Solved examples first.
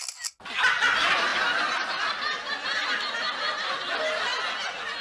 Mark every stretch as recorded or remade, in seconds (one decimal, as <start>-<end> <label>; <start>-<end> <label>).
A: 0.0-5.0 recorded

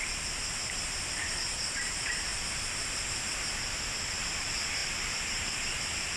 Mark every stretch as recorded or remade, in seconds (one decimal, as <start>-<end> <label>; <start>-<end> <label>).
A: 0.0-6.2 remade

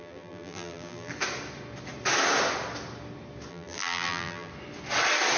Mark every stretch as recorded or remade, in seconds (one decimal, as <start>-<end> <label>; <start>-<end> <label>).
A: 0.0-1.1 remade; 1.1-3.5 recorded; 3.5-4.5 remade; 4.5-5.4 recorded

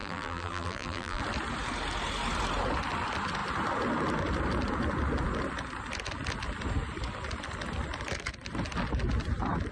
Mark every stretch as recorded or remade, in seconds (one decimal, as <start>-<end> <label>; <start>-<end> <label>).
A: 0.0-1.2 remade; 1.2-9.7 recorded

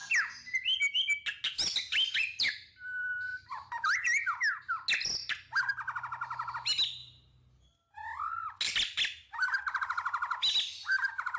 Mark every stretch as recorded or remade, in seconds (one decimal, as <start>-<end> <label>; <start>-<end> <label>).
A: 0.0-3.3 recorded; 3.3-4.6 remade; 4.6-11.4 recorded

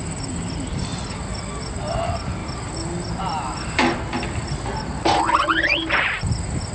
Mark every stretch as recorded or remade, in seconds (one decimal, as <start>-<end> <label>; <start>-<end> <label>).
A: 0.0-2.4 remade; 2.4-3.2 recorded; 3.2-6.7 remade

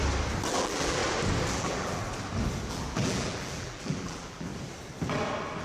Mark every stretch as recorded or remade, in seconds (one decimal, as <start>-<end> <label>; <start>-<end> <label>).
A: 0.0-0.5 recorded; 0.5-1.0 remade; 1.0-1.5 recorded; 1.5-2.0 remade; 2.0-2.7 recorded; 2.7-4.5 remade; 4.5-5.6 recorded

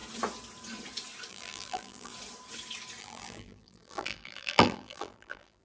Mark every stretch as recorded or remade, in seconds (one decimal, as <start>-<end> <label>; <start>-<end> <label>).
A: 0.0-1.3 recorded; 1.3-2.1 remade; 2.1-3.0 recorded; 3.0-5.6 remade